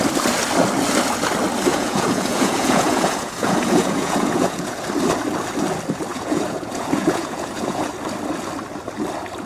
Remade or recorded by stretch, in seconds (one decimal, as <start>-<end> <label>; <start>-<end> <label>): 0.0-1.7 recorded; 1.7-4.8 remade; 4.8-6.1 recorded; 6.1-7.9 remade; 7.9-9.5 recorded